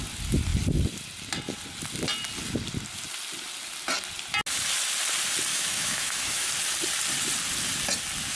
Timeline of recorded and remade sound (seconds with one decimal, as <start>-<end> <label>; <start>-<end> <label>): 0.0-5.5 recorded; 5.5-6.5 remade; 6.5-8.4 recorded